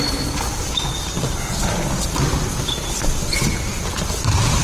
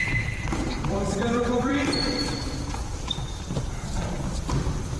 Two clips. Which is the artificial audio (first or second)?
second